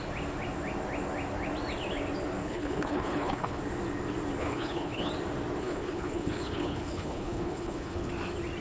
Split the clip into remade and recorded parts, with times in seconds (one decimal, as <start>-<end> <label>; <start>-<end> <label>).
0.0-2.4 recorded; 2.4-3.6 remade; 3.6-4.4 recorded; 4.4-5.1 remade; 5.1-5.6 recorded; 5.6-8.1 remade; 8.1-8.6 recorded